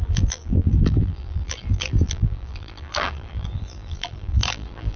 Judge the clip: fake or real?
fake